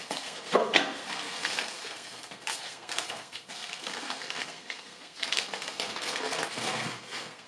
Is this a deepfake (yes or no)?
yes